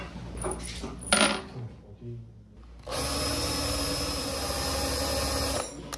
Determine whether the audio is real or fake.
real